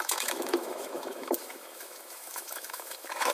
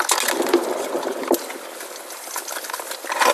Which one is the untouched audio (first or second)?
second